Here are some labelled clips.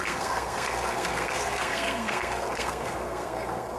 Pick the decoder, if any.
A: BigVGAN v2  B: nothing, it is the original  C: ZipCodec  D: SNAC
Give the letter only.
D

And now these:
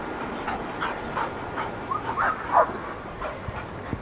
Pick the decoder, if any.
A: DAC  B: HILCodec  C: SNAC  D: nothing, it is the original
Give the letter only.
D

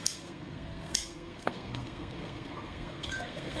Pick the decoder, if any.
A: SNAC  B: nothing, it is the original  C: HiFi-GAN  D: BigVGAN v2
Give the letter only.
A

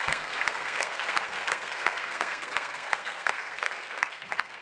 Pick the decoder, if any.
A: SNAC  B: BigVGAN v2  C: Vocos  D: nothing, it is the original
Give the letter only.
A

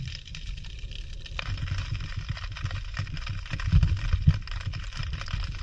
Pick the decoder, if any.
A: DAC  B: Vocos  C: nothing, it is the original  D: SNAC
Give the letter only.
C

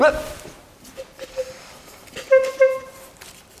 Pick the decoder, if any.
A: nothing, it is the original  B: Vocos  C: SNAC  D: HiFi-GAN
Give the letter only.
A